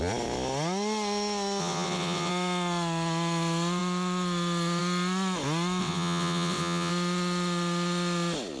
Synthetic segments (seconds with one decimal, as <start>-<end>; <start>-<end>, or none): 1.6-2.3; 5.8-6.9